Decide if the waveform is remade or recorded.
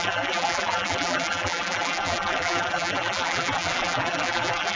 remade